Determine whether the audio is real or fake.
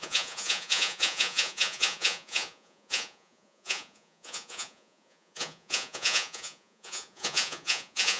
fake